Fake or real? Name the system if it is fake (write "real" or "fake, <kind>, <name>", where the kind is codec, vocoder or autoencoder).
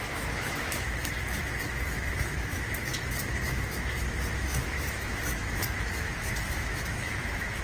fake, autoencoder, DAC-VAE